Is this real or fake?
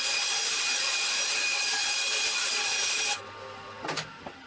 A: real